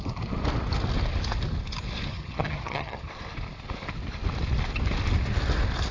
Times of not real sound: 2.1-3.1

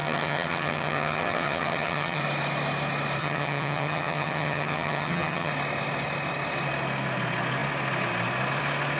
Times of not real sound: 0.0-2.2; 3.2-5.5

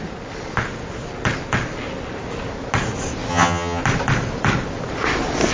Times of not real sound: 3.3-3.8

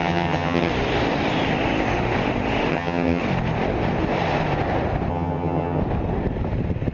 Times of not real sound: 0.0-0.7; 2.7-3.2; 5.1-5.8